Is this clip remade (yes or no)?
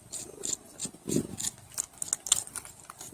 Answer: no